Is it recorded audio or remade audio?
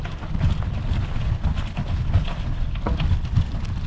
recorded